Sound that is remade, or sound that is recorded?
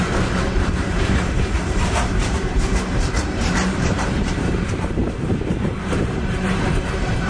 remade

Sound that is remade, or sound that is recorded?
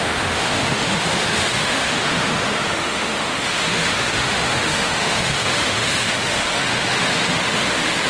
remade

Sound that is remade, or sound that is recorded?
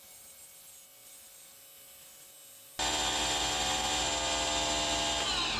recorded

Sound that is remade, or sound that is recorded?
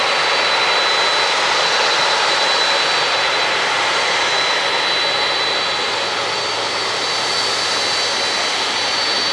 recorded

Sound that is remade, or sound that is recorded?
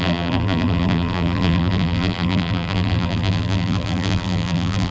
remade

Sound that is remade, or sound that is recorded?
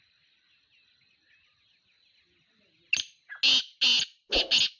recorded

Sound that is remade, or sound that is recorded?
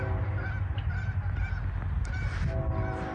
recorded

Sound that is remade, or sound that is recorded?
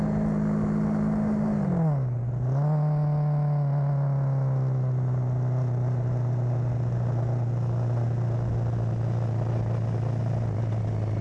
recorded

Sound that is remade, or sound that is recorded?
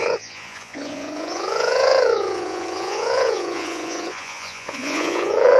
remade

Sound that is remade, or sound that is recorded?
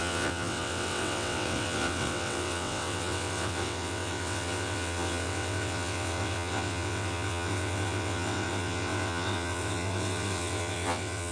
remade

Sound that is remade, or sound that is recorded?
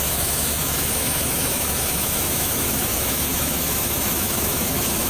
remade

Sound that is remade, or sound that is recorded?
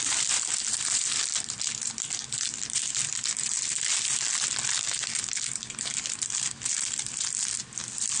recorded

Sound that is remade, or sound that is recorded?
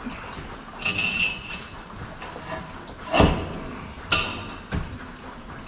recorded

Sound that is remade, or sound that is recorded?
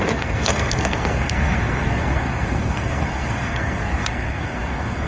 remade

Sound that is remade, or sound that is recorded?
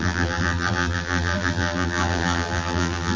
remade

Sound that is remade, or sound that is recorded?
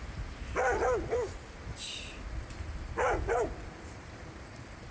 recorded